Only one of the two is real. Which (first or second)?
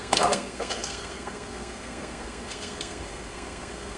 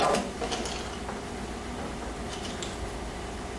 second